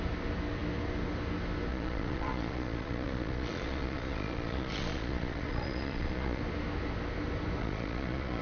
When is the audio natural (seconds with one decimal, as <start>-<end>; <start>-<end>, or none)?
0.0-1.7; 6.4-7.6